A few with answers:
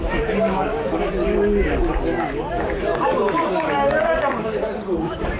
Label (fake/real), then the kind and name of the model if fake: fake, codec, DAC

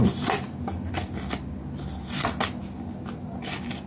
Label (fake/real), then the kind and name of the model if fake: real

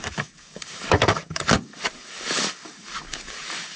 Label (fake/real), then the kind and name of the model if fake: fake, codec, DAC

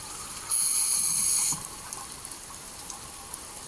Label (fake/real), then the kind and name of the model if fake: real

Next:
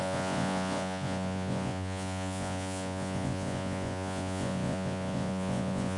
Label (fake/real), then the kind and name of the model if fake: fake, vocoder, Vocos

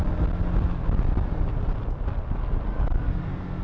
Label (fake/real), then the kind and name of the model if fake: real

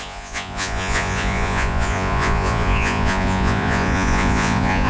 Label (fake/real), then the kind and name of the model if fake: fake, vocoder, Vocos